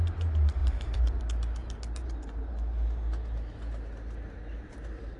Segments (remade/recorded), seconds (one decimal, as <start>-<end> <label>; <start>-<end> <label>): 0.0-0.6 recorded; 0.6-1.2 remade; 1.2-1.6 recorded; 1.6-2.4 remade; 2.4-5.2 recorded